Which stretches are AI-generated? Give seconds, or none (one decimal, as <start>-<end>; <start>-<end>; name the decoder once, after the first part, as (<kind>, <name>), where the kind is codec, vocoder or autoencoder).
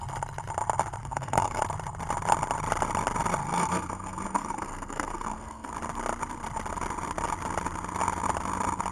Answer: 1.0-1.6 (codec, SNAC); 3.4-5.7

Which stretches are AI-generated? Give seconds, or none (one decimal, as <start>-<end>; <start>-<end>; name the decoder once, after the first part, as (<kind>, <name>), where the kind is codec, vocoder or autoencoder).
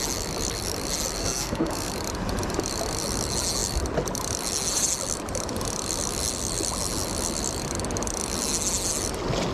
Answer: 1.2-1.9 (codec, SNAC)